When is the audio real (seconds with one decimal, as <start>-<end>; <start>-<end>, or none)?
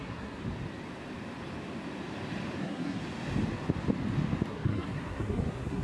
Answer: 0.4-2.6; 3.0-4.5